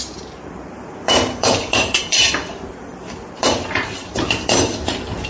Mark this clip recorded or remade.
remade